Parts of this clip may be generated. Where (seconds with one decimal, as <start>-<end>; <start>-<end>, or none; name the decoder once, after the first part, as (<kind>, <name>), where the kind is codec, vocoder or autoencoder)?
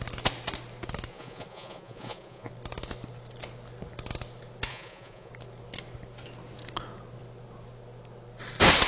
1.1-2.5 (vocoder, Vocos); 4.7-5.3